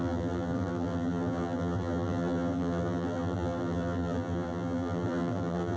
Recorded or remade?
remade